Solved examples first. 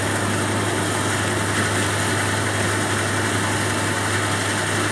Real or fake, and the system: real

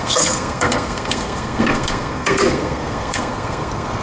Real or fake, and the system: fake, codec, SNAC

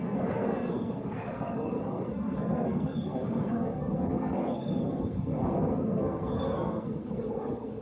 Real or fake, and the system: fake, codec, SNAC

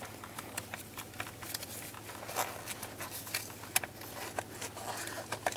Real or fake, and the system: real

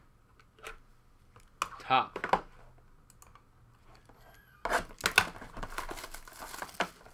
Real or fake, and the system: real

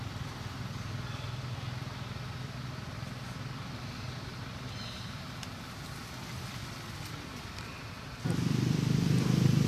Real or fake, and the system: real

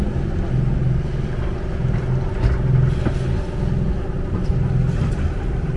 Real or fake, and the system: real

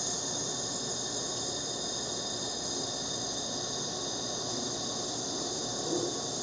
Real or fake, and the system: real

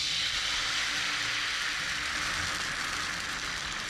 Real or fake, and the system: real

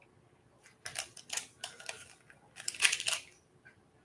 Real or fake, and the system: real